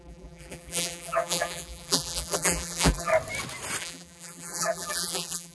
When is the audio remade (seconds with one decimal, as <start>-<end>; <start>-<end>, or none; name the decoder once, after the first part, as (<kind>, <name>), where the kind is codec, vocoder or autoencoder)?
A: 0.0-3.1 (vocoder, BigVGAN v2); 3.8-5.5